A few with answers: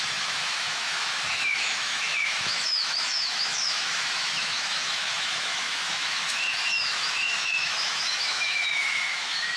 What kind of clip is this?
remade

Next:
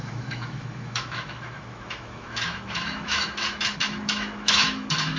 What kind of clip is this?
remade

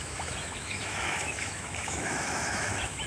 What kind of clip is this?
remade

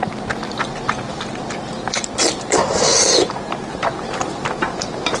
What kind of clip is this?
recorded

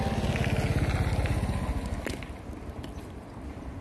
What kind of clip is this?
recorded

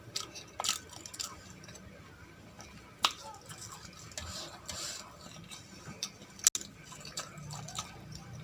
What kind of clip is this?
recorded